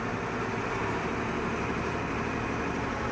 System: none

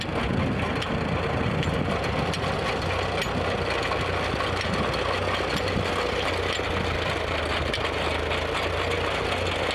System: none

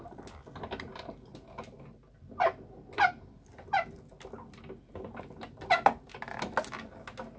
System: none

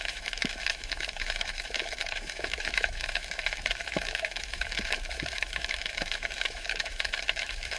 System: autoencoder, DAC-VAE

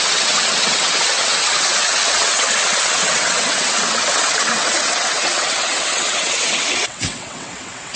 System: vocoder, WaveNeXt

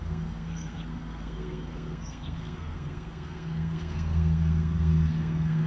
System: codec, SNAC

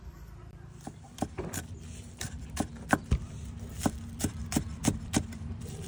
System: vocoder, BigVGAN v2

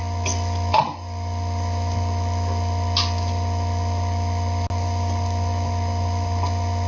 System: none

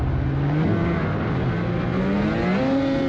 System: none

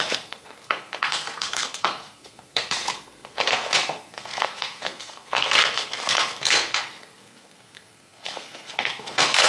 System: codec, SNAC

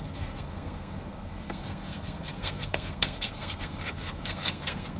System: codec, SNAC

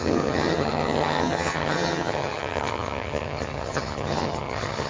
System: vocoder, HiFi-GAN